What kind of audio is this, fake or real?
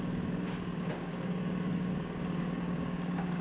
fake